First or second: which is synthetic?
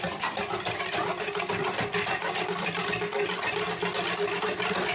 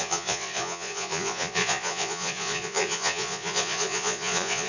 second